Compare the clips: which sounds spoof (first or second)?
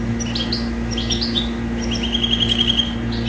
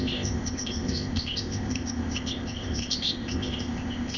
second